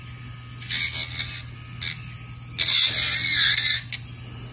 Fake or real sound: real